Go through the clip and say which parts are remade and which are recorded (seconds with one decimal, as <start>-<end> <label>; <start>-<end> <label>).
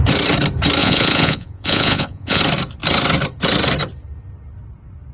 0.0-0.8 recorded; 0.8-2.4 remade; 2.4-5.1 recorded